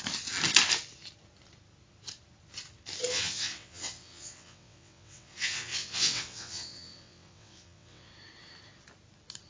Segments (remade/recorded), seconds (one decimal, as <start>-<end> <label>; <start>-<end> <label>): 0.0-3.1 recorded; 3.1-8.1 remade; 8.1-9.5 recorded